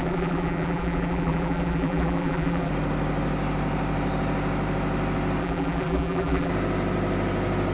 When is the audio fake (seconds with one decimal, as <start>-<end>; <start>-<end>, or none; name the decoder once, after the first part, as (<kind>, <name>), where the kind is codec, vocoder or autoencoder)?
0.0-2.7 (vocoder, BigVGAN v2); 5.4-6.5